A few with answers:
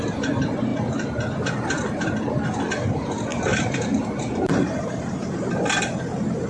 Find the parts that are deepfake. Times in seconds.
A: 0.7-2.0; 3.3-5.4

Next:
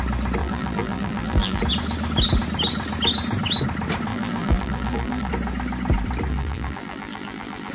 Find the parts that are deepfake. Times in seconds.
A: 0.4-1.6; 4.1-5.3; 6.3-7.7

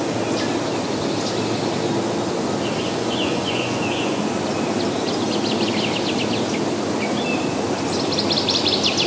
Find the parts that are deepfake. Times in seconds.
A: 2.8-4.2

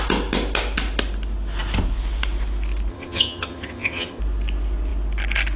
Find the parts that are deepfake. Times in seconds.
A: 2.9-4.2